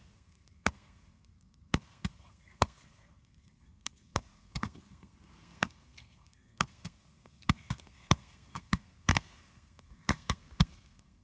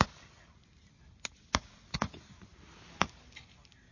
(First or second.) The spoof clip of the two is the first